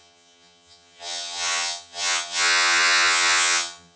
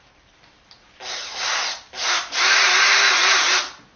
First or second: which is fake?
first